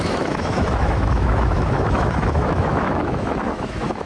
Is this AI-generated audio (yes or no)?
yes